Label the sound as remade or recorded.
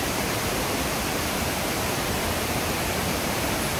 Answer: remade